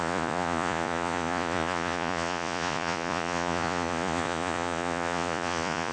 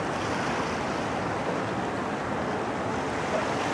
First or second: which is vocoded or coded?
first